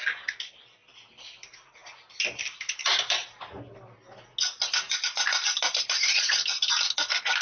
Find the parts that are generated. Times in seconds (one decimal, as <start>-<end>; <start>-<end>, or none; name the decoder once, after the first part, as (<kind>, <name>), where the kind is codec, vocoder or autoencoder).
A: none